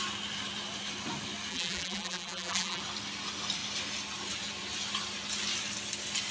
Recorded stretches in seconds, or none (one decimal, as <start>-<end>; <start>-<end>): 0.0-1.5; 2.8-6.3